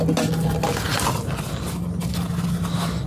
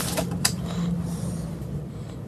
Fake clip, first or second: second